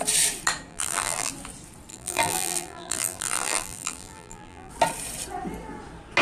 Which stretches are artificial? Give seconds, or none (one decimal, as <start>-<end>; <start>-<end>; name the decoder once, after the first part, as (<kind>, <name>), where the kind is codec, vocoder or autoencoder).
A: 0.7-1.3 (vocoder, BigVGAN v2); 1.9-4.7